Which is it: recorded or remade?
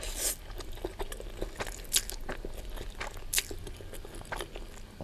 recorded